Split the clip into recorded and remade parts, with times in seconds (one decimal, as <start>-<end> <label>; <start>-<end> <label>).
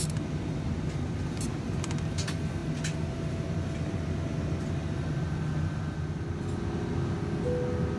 0.0-8.0 recorded